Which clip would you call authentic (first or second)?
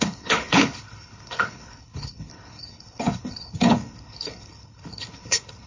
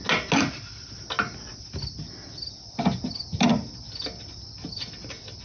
second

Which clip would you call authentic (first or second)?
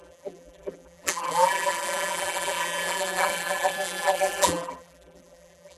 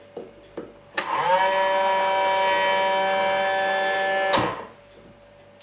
second